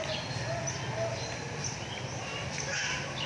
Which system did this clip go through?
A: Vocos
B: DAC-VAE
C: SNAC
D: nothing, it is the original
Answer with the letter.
D